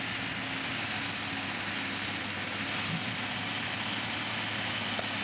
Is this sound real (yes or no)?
yes